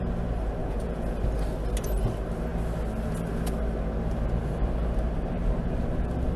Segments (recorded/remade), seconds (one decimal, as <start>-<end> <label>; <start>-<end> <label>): 0.0-0.6 recorded; 0.6-1.2 remade; 1.2-6.4 recorded